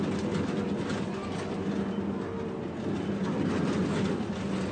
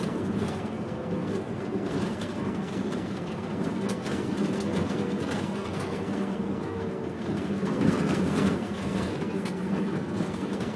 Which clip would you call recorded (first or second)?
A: first